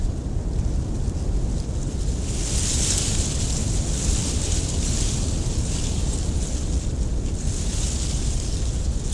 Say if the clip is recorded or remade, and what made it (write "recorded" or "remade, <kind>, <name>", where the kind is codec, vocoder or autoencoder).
recorded